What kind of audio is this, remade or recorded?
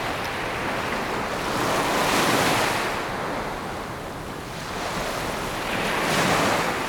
recorded